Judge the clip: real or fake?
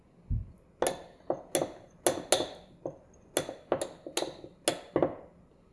real